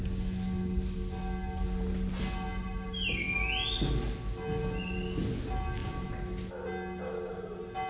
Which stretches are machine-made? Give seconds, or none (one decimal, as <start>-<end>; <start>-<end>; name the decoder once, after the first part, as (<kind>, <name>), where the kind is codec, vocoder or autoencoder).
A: none